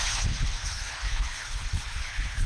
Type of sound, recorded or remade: remade